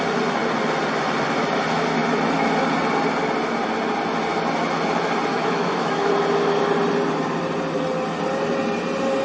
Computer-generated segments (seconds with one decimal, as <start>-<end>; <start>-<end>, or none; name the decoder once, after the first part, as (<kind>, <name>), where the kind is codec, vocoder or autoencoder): 5.3-6.1 (autoencoder, DAC-VAE)